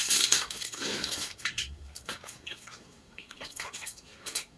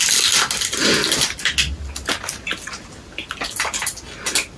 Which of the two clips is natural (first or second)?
second